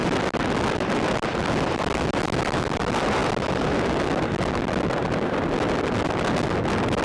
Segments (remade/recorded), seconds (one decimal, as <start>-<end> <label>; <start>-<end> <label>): 0.0-7.0 recorded